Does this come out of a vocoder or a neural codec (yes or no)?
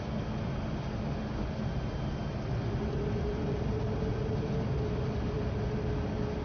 no